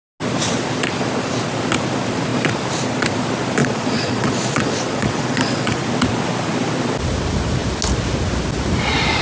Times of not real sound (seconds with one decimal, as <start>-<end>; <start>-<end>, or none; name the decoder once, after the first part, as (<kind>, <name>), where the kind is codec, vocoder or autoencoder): 3.6-5.8 (vocoder, Vocos)